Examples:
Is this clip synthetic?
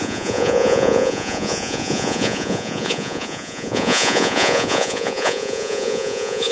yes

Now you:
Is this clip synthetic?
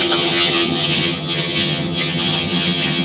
yes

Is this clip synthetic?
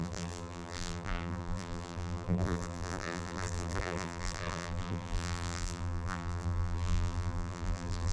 yes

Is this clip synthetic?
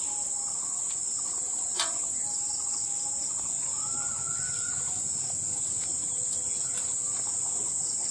no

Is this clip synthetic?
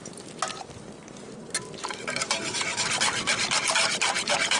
no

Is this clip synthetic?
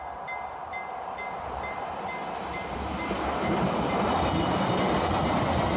no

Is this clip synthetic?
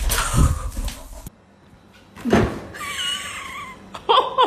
no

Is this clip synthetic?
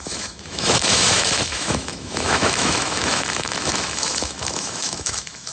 yes